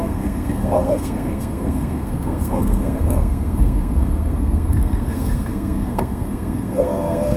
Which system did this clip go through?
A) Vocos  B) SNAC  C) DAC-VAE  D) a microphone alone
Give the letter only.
B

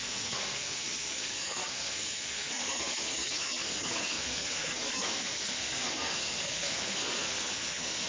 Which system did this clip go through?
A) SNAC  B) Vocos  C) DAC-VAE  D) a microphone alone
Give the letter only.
A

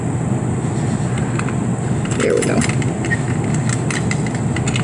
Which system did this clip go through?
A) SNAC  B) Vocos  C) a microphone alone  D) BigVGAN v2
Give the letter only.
C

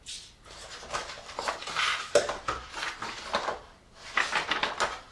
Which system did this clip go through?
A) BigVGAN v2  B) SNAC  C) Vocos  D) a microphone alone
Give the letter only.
D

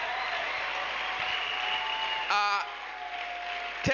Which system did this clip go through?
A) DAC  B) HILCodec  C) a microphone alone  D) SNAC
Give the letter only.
C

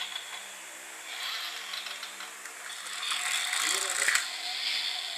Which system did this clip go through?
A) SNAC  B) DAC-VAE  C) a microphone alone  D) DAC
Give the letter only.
C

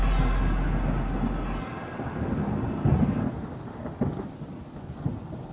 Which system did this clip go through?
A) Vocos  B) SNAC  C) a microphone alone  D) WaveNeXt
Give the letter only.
C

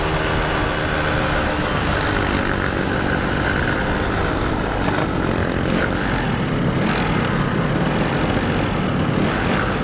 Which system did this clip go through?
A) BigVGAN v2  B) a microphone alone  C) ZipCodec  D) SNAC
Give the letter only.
B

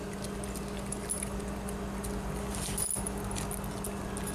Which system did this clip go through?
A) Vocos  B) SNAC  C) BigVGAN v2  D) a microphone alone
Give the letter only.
D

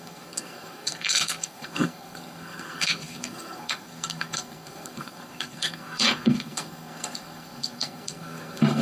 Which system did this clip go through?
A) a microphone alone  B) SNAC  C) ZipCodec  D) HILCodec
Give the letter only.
B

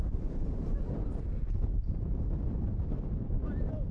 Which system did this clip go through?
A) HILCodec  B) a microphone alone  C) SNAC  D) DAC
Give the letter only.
B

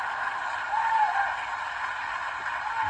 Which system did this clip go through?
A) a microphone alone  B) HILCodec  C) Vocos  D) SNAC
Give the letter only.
A